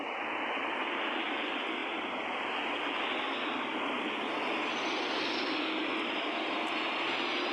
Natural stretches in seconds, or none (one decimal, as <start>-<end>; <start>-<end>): 0.0-7.5